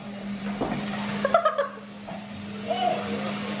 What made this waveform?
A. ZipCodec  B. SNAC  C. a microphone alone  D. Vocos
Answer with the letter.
C